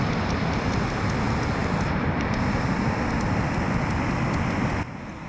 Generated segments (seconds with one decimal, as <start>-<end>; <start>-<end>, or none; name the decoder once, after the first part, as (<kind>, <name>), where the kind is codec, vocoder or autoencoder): 1.6-4.7 (vocoder, BigVGAN v2)